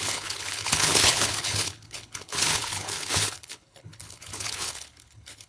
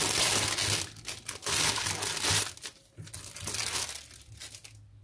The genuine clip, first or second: second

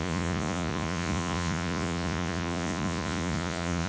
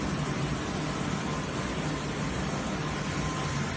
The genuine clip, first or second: second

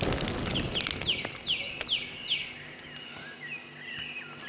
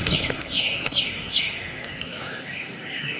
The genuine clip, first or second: first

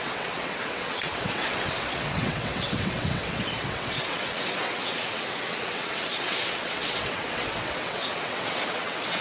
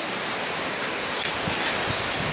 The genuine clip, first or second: second